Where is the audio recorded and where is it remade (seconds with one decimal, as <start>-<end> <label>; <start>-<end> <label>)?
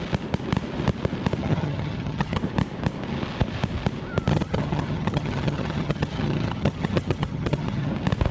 0.0-1.4 recorded; 1.4-2.4 remade; 2.4-4.3 recorded; 4.3-7.9 remade; 7.9-8.3 recorded